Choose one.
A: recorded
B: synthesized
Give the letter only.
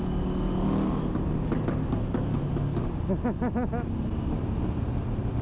A